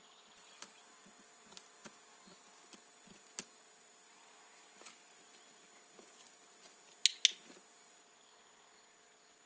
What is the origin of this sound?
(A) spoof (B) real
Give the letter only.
B